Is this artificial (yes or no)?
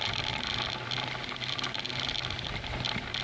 no